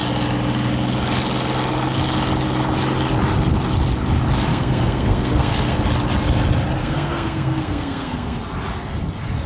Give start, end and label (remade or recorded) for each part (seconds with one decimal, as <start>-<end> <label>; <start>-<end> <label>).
0.0-4.5 recorded; 4.5-5.8 remade; 5.8-6.8 recorded; 6.8-8.4 remade; 8.4-9.5 recorded